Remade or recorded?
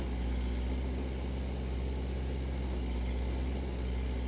recorded